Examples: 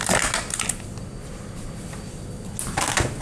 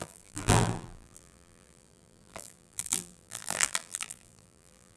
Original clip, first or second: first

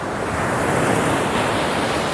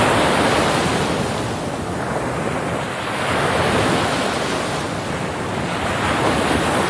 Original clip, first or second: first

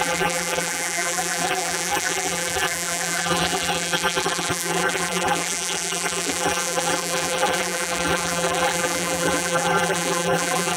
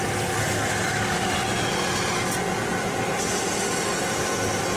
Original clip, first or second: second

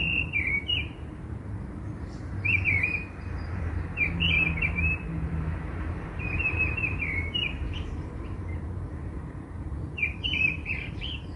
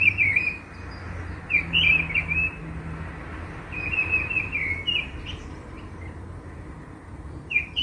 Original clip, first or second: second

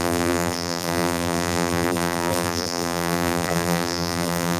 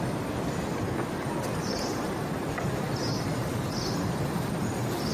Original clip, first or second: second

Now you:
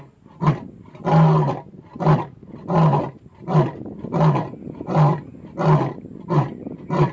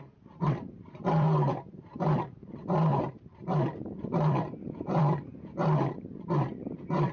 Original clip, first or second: first